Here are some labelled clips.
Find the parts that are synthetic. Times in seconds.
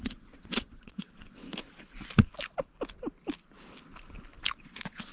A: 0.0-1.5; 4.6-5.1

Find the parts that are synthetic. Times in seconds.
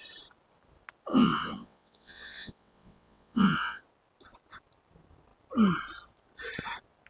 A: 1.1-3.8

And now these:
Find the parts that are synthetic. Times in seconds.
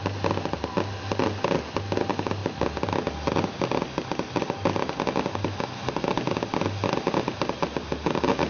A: none